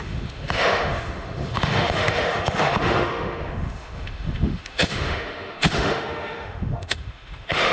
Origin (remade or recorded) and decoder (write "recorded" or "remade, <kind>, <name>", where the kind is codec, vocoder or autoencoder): remade, autoencoder, DAC-VAE